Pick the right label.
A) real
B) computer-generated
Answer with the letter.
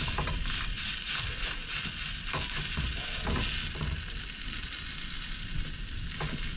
A